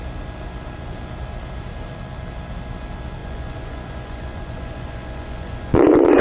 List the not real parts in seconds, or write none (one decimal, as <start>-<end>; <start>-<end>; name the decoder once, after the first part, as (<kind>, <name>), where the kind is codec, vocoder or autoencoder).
3.2-6.2 (vocoder, Vocos)